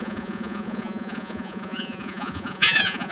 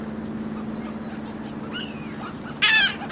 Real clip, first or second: second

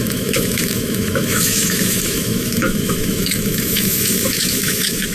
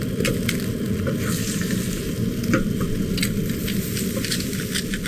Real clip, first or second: second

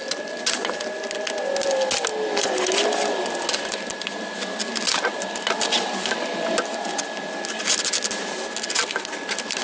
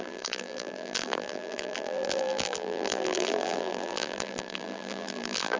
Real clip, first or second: first